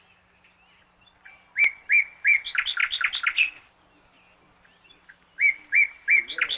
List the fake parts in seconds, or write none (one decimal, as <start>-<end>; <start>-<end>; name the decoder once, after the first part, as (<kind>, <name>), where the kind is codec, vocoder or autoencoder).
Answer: none